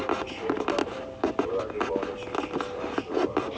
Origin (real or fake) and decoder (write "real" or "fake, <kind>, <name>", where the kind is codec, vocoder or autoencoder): real